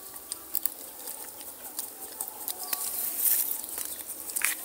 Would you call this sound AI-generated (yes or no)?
no